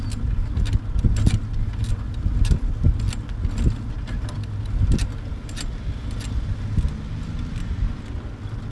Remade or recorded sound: recorded